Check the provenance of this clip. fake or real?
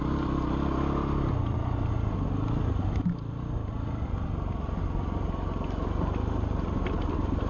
real